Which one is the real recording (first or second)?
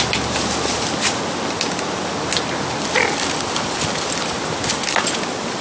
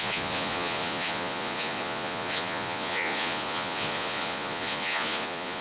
first